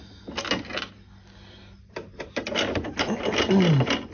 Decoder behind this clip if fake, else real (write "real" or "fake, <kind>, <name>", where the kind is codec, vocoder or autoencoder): real